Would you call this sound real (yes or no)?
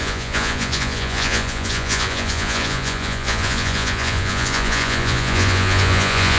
no